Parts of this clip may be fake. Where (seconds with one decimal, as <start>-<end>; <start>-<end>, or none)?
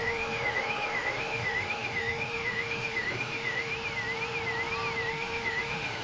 0.0-3.7; 5.1-6.0